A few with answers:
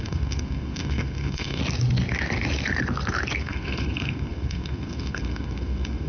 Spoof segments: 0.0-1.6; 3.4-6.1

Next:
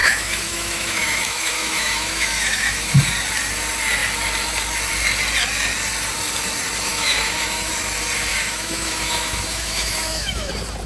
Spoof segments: 0.0-2.9; 6.9-7.7; 8.3-10.5

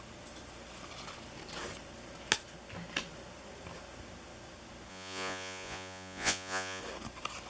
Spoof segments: 4.9-6.8

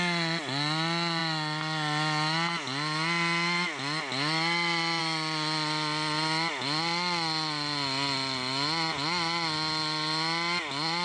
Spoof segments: none

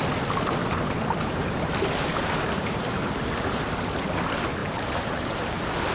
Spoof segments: 0.6-4.1; 4.6-5.5

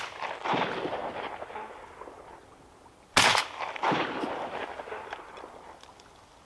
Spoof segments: none